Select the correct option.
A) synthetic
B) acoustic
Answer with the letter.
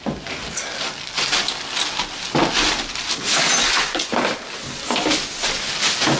B